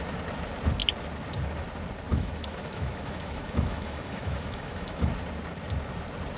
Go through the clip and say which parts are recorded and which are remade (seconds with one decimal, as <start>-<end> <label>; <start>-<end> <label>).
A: 0.0-2.1 recorded; 2.1-5.1 remade; 5.1-6.4 recorded